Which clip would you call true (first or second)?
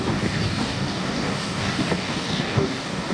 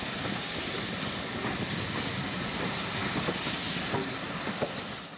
second